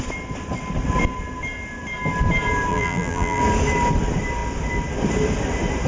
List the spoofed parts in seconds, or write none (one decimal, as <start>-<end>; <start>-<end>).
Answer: 2.7-3.4